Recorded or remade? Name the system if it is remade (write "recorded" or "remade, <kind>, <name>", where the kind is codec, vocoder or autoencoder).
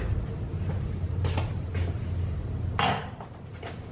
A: recorded